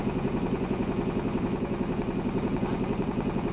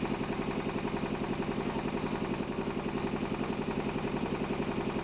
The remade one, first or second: first